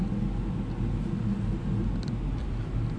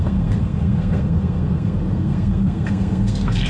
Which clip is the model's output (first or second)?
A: second